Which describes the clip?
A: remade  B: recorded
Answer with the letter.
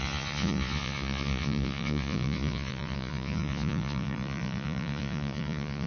A